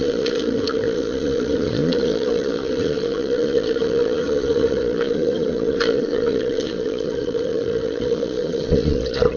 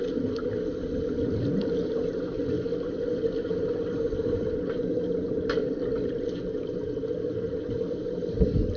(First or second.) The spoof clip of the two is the first